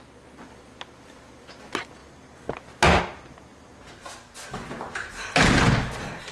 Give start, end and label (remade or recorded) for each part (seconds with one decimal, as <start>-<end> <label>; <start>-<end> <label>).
0.0-6.3 recorded